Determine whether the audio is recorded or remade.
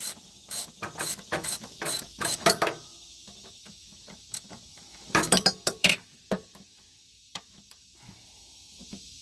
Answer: remade